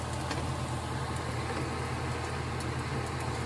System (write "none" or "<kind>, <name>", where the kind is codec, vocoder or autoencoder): none